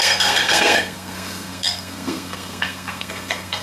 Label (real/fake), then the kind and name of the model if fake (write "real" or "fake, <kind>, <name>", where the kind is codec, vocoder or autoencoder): fake, codec, SNAC